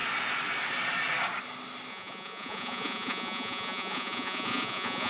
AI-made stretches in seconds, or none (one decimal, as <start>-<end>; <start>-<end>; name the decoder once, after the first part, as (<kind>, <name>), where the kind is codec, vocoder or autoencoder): 1.9-5.1 (vocoder, Vocos)